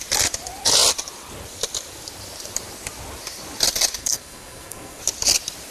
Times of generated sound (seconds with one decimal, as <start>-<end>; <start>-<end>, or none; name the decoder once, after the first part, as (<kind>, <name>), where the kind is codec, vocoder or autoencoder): 4.0-5.0 (codec, SNAC)